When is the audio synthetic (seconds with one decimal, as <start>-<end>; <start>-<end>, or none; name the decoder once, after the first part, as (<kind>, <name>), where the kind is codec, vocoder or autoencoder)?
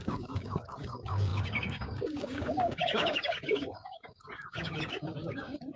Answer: 0.0-5.8 (codec, DAC)